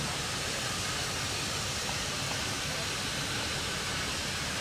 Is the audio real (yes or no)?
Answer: no